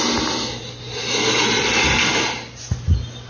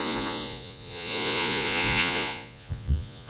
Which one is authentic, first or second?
first